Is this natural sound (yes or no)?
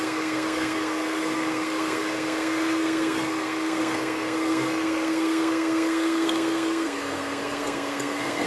no